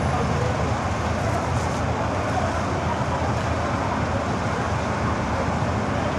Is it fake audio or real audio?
real